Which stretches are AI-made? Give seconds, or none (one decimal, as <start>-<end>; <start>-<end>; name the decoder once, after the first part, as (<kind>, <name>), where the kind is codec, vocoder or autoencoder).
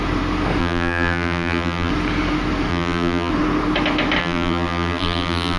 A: 0.6-1.9 (vocoder, BigVGAN v2); 2.7-3.3; 4.2-5.6